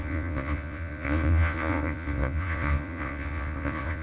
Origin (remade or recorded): remade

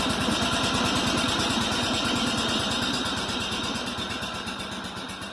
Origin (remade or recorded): remade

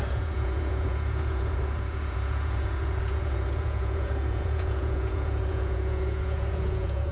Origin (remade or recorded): remade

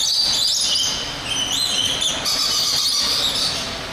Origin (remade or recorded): recorded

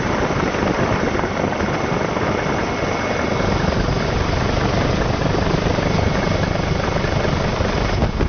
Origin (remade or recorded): recorded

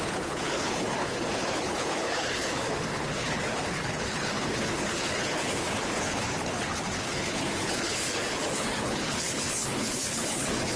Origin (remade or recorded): remade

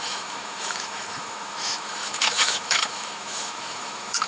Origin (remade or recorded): remade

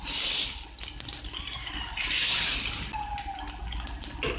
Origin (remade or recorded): recorded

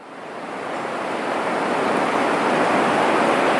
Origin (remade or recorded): recorded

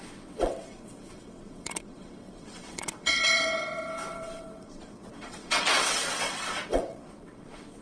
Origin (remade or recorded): remade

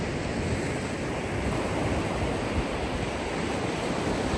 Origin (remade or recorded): recorded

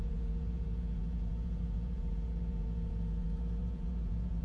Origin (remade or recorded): remade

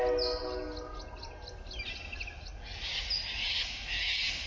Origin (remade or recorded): recorded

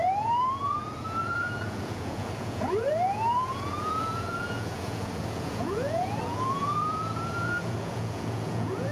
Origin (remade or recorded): remade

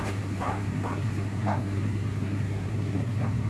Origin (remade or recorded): remade